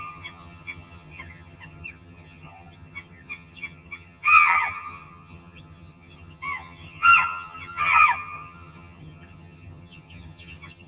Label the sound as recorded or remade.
remade